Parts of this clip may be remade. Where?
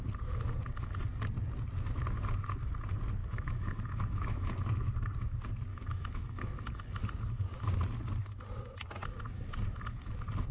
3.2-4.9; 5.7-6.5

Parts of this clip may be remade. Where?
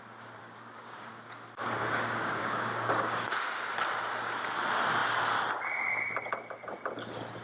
0.4-1.1; 1.6-3.3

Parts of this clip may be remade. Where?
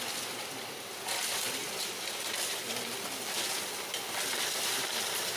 none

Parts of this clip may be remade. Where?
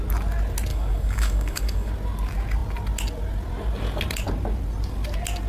0.7-1.9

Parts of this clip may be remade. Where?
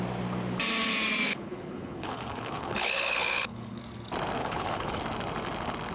1.3-3.8; 4.4-5.0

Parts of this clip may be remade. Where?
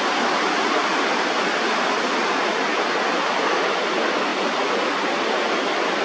none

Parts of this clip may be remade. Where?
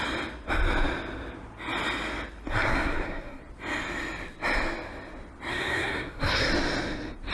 2.5-3.4; 5.5-6.5